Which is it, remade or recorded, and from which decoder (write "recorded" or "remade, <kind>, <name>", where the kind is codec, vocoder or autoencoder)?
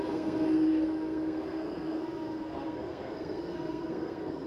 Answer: remade, codec, SNAC